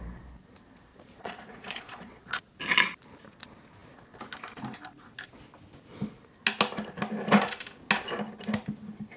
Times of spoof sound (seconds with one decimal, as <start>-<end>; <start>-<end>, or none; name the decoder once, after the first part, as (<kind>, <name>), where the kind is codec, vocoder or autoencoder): 0.9-2.6 (vocoder, Vocos)